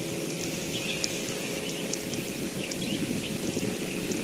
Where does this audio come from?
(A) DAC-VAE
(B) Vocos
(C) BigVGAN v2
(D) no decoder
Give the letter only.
D